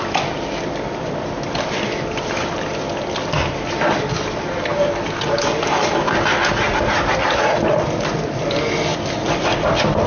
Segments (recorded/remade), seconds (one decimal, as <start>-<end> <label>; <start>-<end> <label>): 0.0-4.7 remade; 4.7-7.1 recorded; 7.1-10.1 remade